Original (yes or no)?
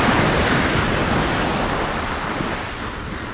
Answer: yes